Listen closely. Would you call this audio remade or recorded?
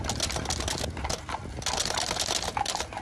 recorded